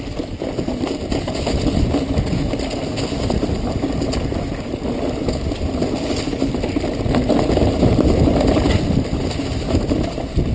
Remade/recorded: recorded